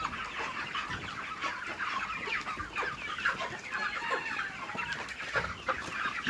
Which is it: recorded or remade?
recorded